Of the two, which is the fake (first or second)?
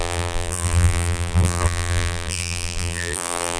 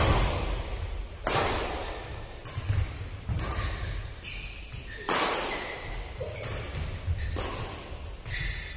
first